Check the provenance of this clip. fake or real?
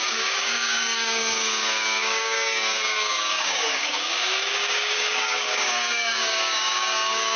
fake